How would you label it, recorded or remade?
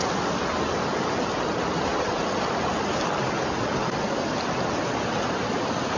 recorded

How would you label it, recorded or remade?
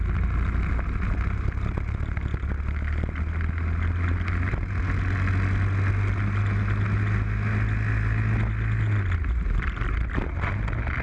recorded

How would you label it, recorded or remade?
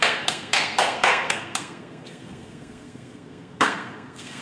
remade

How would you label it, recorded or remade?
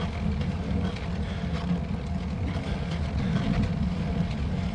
recorded